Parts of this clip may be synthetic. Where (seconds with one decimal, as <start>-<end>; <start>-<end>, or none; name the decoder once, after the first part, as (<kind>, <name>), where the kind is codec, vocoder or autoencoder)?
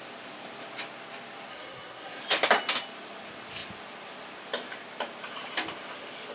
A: 1.5-2.2 (codec, SNAC)